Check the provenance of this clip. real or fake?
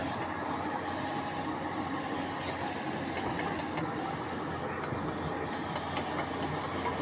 real